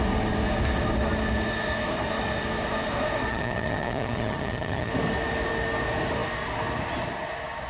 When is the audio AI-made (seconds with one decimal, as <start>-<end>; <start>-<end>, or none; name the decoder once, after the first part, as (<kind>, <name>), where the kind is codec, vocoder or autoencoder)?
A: 3.3-4.9 (vocoder, HiFi-GAN)